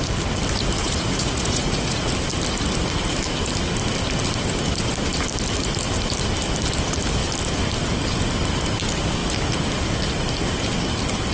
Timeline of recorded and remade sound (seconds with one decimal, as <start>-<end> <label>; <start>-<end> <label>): 0.0-0.8 recorded; 0.8-2.1 remade; 2.1-11.3 recorded